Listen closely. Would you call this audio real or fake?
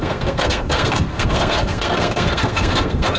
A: fake